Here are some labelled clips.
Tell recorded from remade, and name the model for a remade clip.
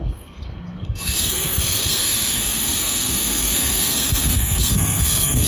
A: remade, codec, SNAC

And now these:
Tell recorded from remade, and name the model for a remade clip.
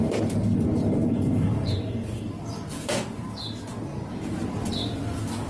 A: recorded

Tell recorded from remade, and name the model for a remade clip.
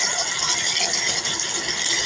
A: recorded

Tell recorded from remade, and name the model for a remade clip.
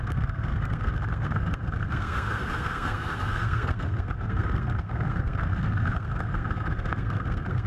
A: remade, codec, SNAC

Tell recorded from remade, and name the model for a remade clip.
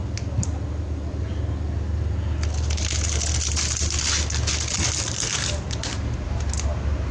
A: recorded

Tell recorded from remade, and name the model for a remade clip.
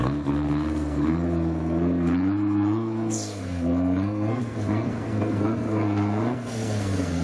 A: remade, codec, SNAC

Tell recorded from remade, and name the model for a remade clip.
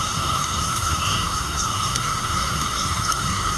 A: remade, codec, SNAC